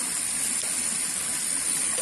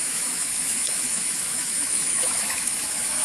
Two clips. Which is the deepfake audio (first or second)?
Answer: second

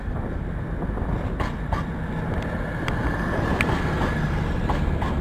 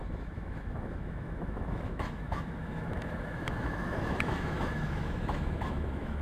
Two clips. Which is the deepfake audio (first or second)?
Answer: second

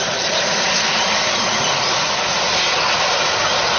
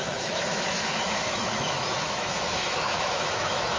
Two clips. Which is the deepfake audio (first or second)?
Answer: second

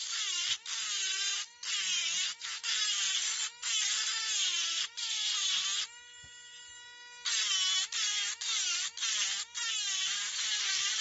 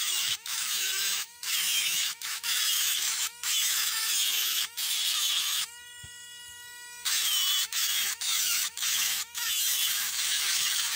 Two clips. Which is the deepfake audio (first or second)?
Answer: second